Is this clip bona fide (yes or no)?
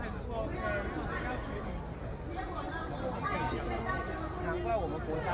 yes